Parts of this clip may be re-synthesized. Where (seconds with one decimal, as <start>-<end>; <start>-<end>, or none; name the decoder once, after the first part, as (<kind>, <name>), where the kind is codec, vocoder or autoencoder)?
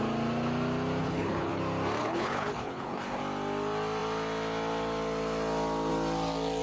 1.0-1.6 (codec, HILCodec); 2.0-3.2